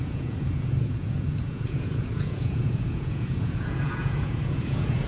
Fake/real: fake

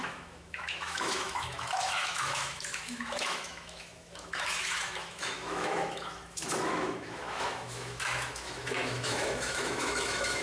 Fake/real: fake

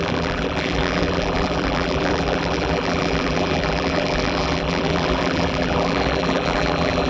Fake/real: fake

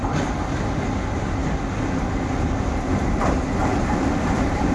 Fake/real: real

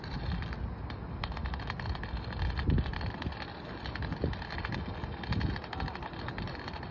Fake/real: real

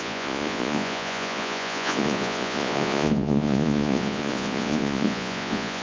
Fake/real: fake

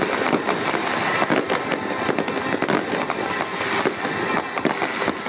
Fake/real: real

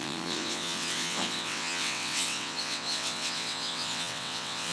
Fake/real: fake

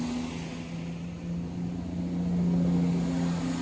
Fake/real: real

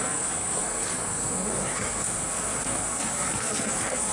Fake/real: fake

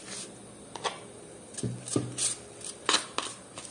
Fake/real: real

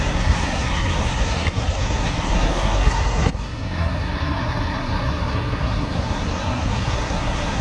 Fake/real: fake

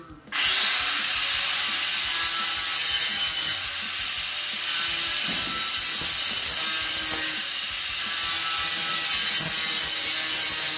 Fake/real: real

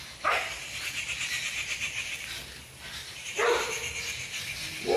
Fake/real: real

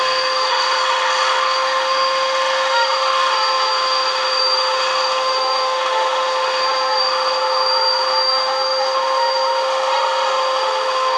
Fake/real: fake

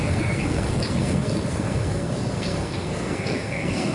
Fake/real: fake